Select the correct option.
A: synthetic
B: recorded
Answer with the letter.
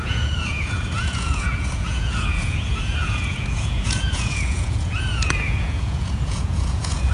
A